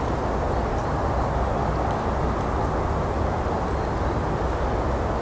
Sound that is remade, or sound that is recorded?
recorded